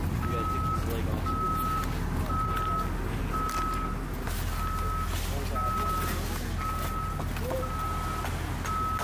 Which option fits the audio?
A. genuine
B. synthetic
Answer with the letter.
A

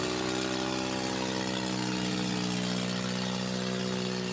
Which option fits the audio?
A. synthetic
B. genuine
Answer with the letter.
B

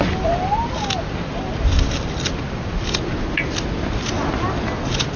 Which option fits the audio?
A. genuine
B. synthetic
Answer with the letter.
A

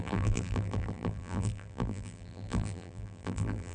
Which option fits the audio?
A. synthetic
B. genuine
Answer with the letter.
A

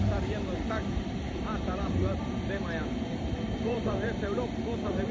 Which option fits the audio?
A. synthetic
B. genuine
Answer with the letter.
A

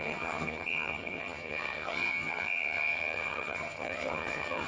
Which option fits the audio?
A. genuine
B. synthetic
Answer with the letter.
B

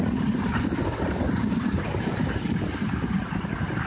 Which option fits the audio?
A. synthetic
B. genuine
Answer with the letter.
A